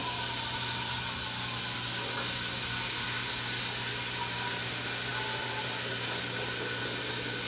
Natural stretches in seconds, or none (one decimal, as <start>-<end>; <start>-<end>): 0.0-7.5